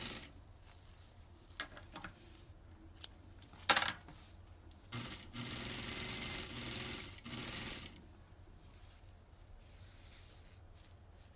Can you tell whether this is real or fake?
real